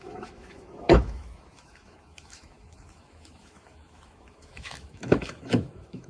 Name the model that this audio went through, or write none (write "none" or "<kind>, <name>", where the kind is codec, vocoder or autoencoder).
autoencoder, DAC-VAE